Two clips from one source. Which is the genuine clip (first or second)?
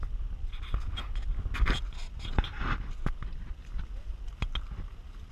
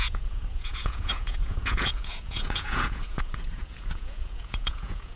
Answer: first